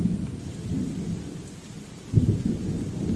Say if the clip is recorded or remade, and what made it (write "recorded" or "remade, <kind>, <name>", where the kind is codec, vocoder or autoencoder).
recorded